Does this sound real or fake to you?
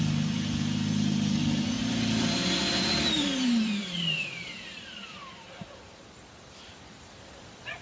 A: fake